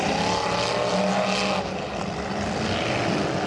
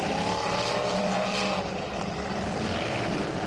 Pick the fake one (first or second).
second